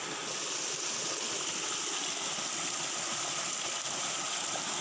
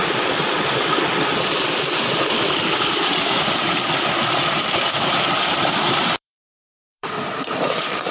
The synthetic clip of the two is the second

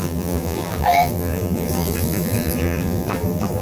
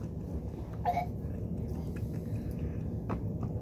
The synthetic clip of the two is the first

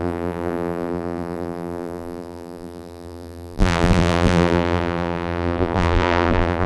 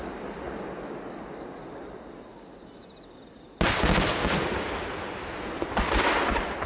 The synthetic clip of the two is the first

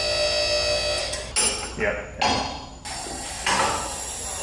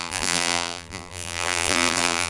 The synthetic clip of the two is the second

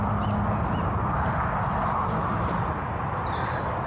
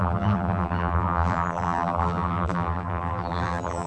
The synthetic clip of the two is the second